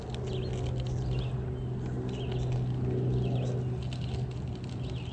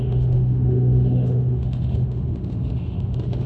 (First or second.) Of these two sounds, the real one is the first